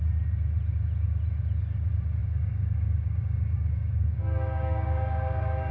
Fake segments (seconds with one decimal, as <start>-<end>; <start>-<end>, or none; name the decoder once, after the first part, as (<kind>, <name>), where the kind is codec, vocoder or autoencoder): 2.2-5.7 (codec, DAC)